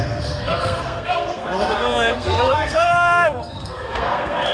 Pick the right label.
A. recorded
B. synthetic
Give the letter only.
B